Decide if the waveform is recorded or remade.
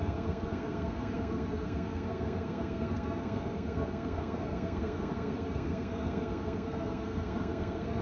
remade